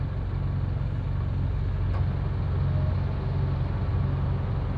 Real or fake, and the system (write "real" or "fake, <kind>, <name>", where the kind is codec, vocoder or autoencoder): real